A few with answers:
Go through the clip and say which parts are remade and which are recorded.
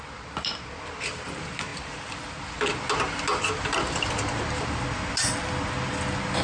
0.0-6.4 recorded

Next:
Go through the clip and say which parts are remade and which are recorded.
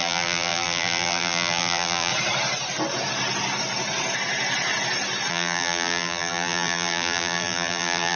0.0-2.1 remade; 2.1-5.3 recorded; 5.3-8.2 remade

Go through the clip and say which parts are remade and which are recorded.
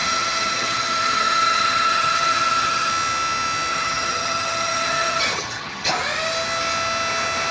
0.0-2.9 remade; 2.9-3.7 recorded; 3.7-5.9 remade; 5.9-7.5 recorded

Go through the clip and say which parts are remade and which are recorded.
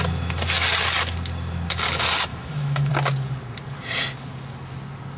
0.0-2.3 recorded; 2.3-2.9 remade; 2.9-5.2 recorded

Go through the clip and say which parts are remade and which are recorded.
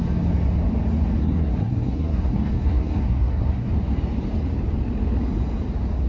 0.0-1.2 recorded; 1.2-3.7 remade; 3.7-6.1 recorded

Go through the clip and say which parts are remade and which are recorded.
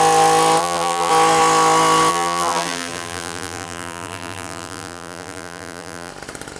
0.0-0.6 recorded; 0.6-1.1 remade; 1.1-2.1 recorded; 2.1-6.1 remade; 6.1-6.6 recorded